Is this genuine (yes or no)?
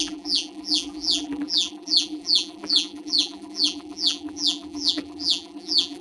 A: no